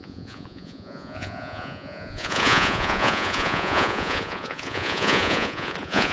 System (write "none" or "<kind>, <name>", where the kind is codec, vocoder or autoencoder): vocoder, Vocos